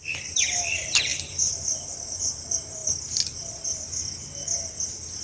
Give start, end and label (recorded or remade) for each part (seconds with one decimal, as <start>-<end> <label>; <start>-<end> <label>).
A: 0.0-1.1 recorded; 1.1-2.2 remade; 2.2-5.2 recorded